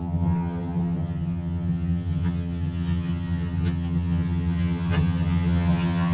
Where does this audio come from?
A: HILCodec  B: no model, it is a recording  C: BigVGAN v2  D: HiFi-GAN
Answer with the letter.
D